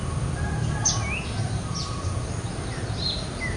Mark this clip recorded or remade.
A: recorded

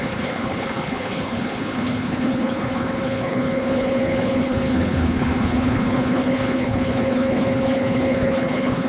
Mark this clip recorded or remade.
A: remade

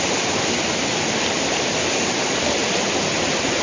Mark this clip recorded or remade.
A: recorded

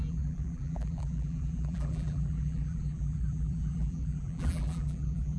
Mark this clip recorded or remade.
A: remade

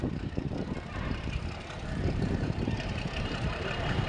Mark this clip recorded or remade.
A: remade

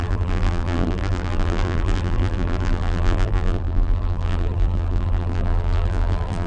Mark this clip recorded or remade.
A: remade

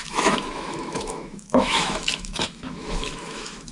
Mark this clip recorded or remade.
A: remade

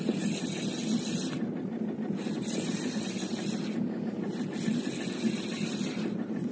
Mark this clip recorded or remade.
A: recorded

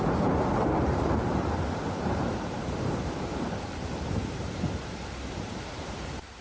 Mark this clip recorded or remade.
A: remade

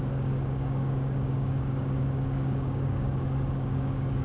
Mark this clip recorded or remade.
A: remade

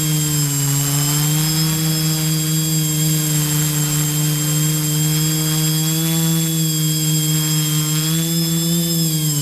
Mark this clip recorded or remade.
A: recorded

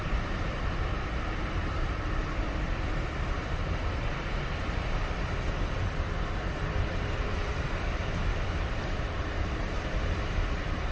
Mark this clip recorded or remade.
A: remade